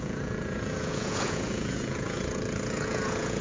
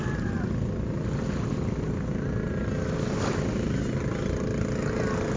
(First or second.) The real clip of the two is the second